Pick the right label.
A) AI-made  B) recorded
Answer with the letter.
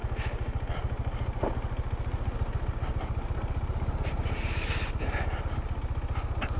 B